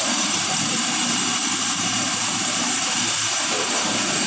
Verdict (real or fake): fake